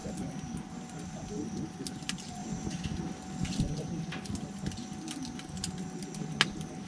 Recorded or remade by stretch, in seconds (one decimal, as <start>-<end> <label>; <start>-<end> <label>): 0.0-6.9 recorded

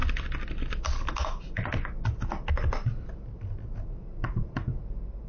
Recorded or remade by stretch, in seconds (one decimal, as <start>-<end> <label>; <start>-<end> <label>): 0.0-4.2 recorded; 4.2-4.8 remade; 4.8-5.3 recorded

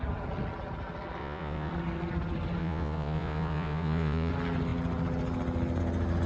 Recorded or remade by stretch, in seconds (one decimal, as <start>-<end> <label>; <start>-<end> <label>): 0.0-1.2 recorded; 1.2-1.7 remade; 1.7-2.6 recorded; 2.6-4.3 remade; 4.3-6.3 recorded

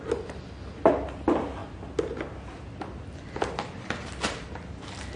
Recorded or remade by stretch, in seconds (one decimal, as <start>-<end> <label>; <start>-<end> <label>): 0.0-5.2 recorded

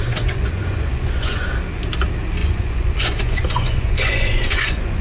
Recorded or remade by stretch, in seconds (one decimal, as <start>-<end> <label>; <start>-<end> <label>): 0.0-1.5 remade; 1.5-2.4 recorded; 2.4-5.0 remade

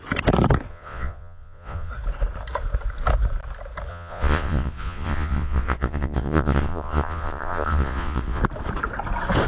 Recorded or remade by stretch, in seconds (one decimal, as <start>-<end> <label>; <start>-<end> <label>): 0.0-0.7 recorded; 0.7-1.9 remade; 1.9-3.9 recorded; 3.9-8.4 remade; 8.4-9.5 recorded

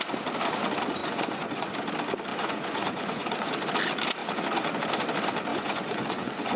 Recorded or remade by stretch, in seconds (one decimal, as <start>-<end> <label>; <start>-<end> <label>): 0.0-1.0 recorded; 1.0-1.7 remade; 1.7-2.3 recorded; 2.3-3.5 remade; 3.5-5.5 recorded; 5.5-6.6 remade

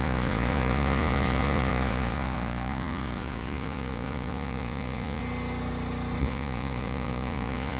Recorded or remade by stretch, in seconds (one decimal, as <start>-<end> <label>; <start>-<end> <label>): 0.0-5.2 remade; 5.2-6.2 recorded; 6.2-7.8 remade